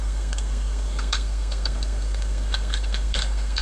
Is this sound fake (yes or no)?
yes